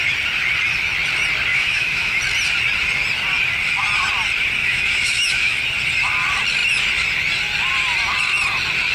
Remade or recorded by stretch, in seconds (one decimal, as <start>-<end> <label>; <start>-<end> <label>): 0.0-1.5 recorded; 1.5-2.2 remade; 2.2-4.6 recorded; 4.6-5.6 remade; 5.6-8.9 recorded